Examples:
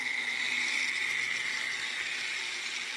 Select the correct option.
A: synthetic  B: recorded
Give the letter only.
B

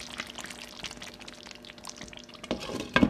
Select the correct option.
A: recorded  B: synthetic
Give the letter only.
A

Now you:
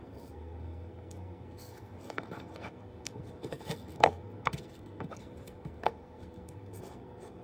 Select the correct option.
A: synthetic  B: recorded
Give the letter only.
A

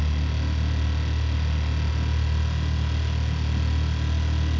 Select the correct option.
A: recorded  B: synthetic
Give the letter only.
A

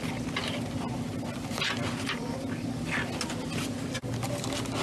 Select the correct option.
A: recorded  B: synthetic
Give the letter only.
A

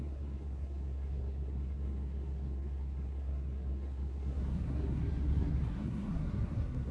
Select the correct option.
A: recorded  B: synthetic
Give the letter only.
B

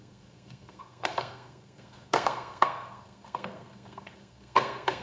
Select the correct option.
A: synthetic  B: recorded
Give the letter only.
A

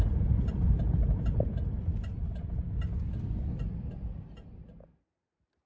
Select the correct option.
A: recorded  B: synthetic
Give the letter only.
A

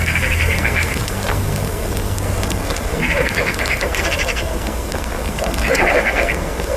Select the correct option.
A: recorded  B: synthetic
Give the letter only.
B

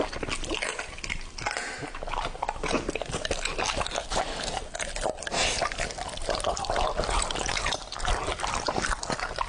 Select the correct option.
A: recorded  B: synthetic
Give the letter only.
A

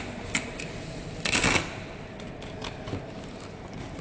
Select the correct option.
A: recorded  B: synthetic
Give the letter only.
A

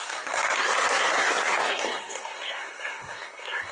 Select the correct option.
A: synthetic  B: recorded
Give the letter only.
A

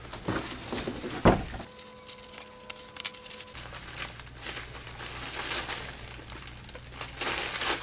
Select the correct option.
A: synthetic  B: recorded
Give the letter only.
B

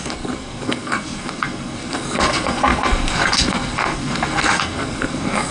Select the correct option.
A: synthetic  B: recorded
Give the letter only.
A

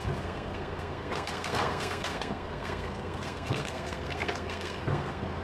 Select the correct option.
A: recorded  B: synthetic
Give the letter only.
B